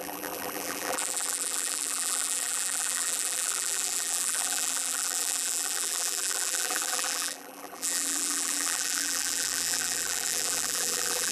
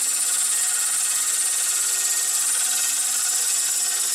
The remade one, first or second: first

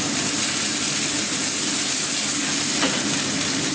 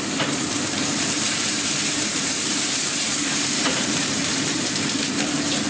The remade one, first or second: second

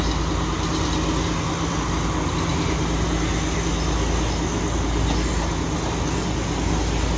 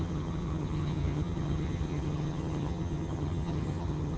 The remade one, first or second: second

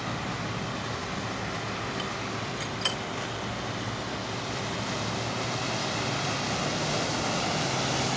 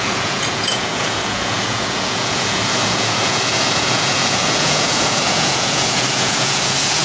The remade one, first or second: second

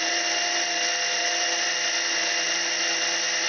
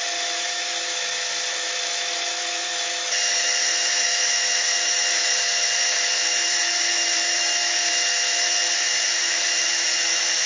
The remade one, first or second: second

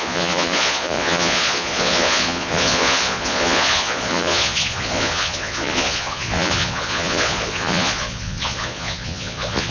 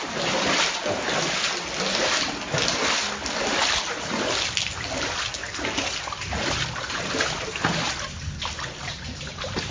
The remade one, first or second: first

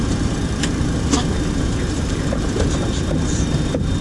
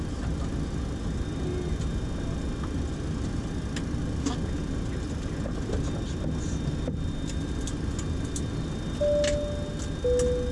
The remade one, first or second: first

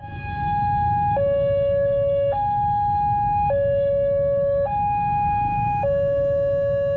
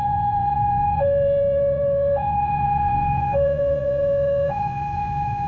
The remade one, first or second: second